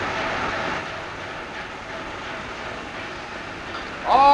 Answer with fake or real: real